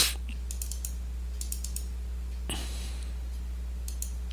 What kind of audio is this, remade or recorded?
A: recorded